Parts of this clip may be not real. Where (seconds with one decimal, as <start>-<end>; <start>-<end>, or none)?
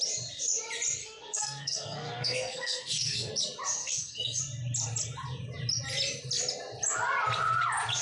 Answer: 1.0-3.3; 3.8-4.4